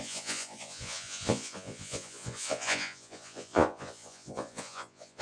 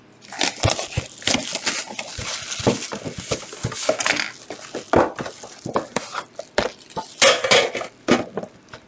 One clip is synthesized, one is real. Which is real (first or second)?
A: second